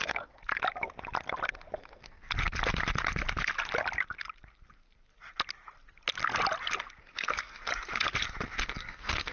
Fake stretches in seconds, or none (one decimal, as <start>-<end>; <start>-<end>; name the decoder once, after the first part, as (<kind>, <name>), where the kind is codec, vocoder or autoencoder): 0.0-0.5 (codec, SNAC); 1.8-2.2; 7.0-7.7; 8.6-9.3